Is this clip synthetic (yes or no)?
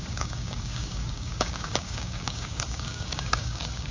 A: yes